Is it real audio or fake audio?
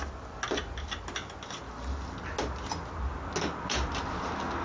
real